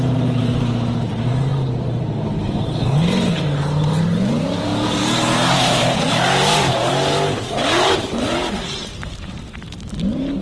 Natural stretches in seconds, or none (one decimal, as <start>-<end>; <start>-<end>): 6.9-7.7